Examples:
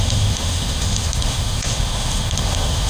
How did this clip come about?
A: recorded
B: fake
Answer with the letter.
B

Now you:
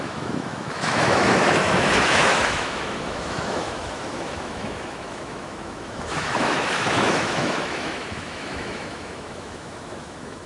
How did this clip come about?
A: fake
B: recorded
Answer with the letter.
A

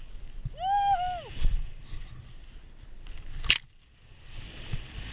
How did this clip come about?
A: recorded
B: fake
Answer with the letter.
A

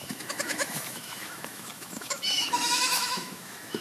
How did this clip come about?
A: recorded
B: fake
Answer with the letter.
B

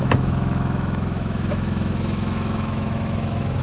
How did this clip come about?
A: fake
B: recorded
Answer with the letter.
A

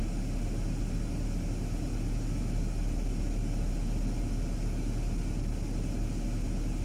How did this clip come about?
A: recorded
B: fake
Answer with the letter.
A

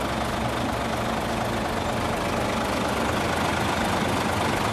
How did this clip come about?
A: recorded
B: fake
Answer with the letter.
A